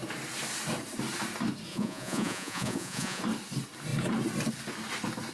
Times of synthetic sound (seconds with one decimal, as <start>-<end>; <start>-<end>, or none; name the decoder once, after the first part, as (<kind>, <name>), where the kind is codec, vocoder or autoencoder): 1.7-3.2 (vocoder, Vocos)